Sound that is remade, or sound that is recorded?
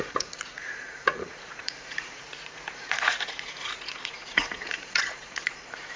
remade